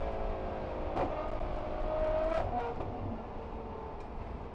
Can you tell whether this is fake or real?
real